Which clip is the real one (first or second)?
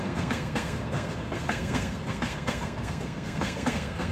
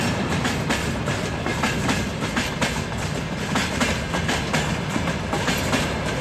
second